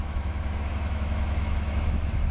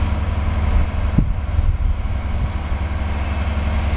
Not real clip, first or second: first